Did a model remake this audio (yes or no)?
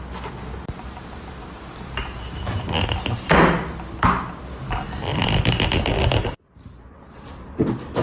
no